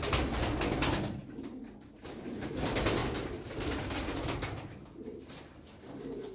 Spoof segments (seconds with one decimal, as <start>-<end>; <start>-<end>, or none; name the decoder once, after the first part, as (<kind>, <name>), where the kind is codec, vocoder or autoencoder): none